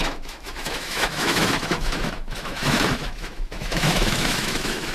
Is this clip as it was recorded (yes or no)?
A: no